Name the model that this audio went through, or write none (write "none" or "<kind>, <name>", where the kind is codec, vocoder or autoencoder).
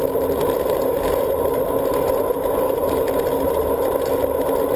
none